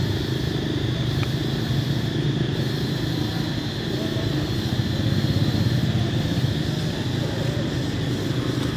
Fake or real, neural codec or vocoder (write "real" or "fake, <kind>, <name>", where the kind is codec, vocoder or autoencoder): real